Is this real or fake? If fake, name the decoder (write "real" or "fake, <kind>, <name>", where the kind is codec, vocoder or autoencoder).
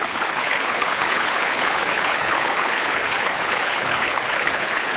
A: fake, codec, HILCodec